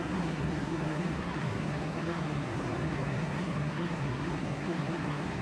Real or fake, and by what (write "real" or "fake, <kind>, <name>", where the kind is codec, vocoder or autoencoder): fake, codec, SNAC